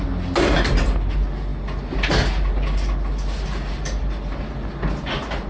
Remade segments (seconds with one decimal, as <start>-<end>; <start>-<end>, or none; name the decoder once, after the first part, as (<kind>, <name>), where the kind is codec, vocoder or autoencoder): none

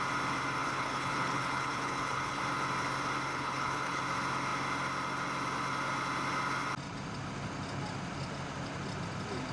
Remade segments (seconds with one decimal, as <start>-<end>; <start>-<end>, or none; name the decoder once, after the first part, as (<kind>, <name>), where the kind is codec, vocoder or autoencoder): 0.6-2.4 (codec, HILCodec); 3.3-4.0

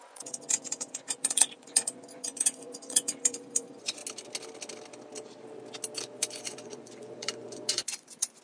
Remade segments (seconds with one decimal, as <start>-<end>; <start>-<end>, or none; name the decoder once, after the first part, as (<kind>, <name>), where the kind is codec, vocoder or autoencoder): 0.0-4.0 (vocoder, Vocos); 6.0-8.4

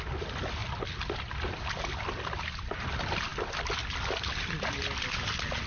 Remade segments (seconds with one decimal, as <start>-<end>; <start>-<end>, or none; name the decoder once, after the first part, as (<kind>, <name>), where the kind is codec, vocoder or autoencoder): none